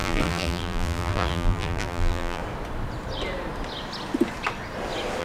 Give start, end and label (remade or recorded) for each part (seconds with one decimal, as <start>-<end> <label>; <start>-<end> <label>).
0.0-2.4 remade; 2.4-5.2 recorded